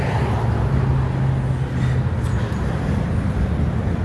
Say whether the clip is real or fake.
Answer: real